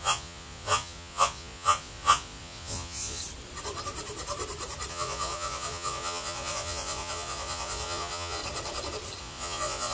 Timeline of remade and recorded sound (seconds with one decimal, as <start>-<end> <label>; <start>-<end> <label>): 0.0-3.2 remade; 3.2-4.9 recorded; 4.9-8.4 remade; 8.4-9.2 recorded; 9.2-9.9 remade